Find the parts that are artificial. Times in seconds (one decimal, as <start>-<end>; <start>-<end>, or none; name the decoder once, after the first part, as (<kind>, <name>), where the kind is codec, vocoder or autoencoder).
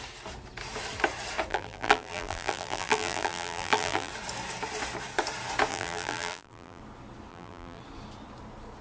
1.5-4.1 (vocoder, BigVGAN v2); 5.7-6.8; 7.3-7.8